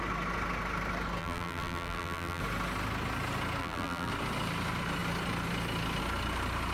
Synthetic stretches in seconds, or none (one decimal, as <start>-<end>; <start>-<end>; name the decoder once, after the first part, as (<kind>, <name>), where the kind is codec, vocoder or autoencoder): 1.2-2.4 (vocoder, BigVGAN v2); 3.6-4.1